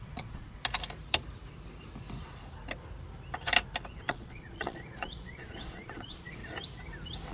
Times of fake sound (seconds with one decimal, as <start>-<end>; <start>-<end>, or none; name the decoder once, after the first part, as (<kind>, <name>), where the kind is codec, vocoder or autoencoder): 0.0-0.6 (vocoder, Vocos); 3.9-6.4